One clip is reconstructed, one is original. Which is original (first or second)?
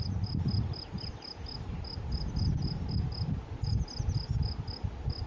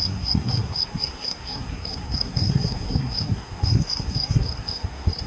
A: first